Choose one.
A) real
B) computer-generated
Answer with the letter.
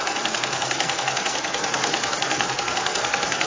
B